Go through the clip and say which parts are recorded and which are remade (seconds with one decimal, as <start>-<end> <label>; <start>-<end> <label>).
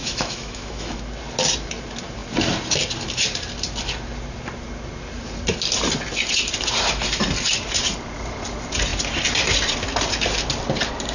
0.0-1.0 remade; 1.0-11.1 recorded